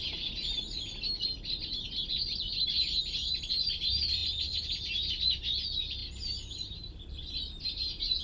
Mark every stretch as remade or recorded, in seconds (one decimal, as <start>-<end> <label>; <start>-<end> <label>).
0.0-8.2 recorded